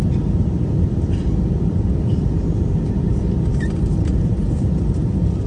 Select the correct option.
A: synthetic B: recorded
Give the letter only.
A